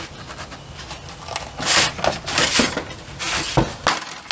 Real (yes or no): yes